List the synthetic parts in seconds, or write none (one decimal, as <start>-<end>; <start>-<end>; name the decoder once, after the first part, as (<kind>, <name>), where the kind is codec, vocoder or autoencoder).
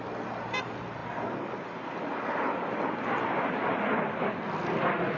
none